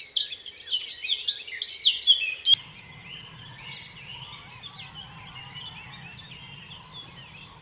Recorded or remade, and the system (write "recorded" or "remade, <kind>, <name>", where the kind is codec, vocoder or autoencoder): recorded